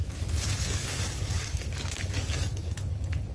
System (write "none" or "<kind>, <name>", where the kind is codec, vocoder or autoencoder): codec, DAC